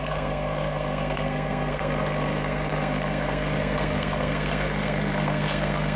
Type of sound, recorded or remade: remade